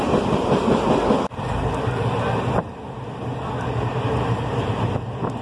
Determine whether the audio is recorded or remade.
recorded